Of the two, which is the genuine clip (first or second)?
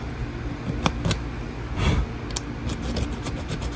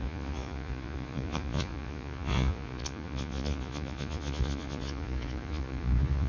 first